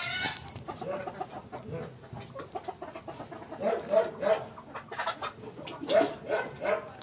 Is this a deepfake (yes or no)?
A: no